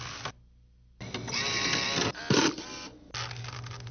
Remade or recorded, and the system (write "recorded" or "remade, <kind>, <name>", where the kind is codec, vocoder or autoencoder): recorded